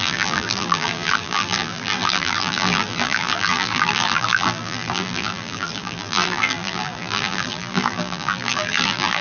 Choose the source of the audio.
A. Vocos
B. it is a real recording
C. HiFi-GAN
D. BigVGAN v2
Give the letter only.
D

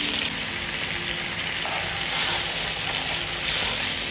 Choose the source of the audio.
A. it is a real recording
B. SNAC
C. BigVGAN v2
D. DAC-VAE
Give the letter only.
A